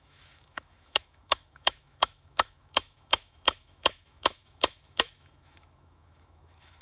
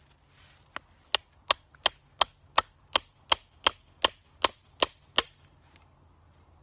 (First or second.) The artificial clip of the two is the first